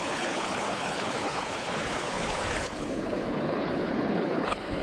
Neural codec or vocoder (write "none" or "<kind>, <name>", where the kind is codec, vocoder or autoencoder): codec, HILCodec